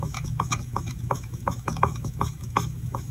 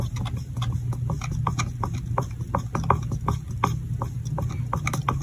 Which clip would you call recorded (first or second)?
second